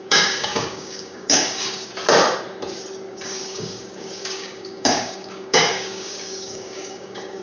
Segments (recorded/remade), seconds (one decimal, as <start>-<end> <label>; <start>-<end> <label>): 0.0-1.9 remade; 1.9-3.1 recorded; 3.1-7.4 remade